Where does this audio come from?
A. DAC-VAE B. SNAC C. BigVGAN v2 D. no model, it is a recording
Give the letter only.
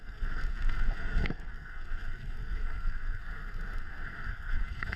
B